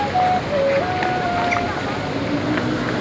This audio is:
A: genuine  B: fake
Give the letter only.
A